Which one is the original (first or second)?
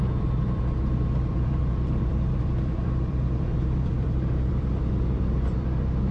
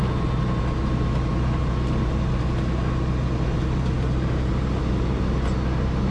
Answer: second